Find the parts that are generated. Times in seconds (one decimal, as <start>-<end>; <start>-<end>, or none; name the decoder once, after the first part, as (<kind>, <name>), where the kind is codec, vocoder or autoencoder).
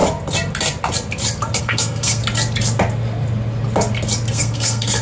1.6-2.2 (codec, SNAC); 4.3-5.0